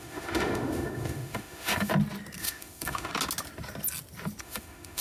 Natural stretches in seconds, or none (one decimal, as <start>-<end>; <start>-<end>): 1.9-2.4; 3.1-4.4